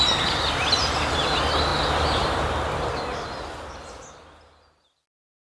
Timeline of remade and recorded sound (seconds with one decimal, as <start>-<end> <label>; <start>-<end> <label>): 0.0-5.4 recorded